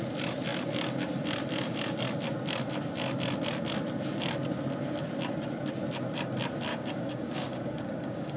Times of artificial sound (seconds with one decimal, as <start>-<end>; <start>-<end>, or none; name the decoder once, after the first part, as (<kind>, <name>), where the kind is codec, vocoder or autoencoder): 6.7-8.4 (codec, DAC)